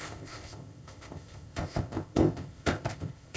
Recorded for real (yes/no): no